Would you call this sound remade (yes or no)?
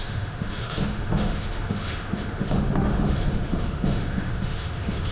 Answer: yes